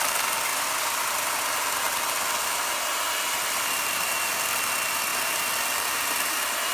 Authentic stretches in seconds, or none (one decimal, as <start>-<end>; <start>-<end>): 0.0-0.5; 1.4-6.7